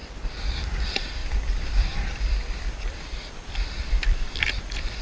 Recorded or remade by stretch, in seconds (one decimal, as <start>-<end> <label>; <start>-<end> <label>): 0.0-5.0 remade